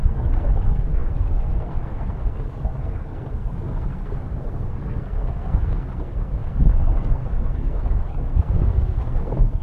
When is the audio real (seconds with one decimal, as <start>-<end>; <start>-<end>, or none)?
none